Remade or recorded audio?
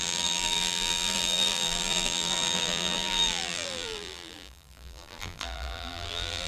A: remade